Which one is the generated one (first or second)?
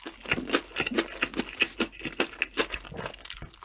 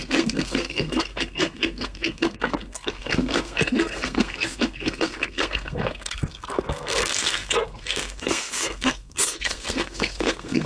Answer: second